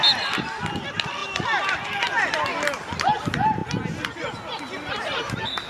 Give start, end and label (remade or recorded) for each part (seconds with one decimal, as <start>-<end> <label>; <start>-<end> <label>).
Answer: 0.0-5.7 recorded